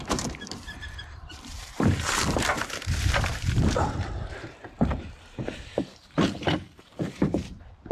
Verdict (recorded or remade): remade